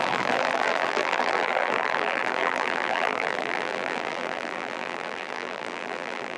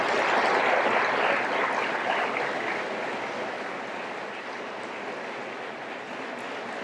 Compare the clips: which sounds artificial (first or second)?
first